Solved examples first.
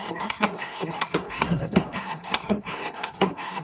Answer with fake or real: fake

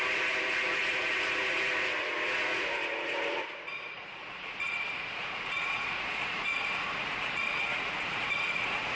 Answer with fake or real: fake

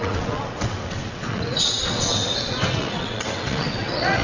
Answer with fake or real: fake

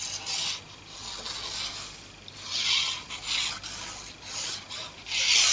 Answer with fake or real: real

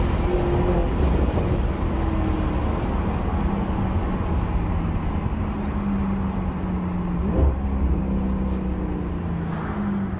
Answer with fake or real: real